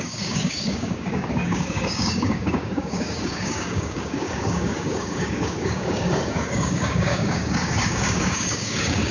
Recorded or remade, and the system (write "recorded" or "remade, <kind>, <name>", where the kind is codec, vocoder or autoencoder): remade, codec, DAC